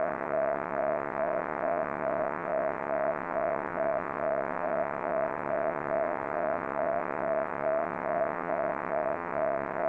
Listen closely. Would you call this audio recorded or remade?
remade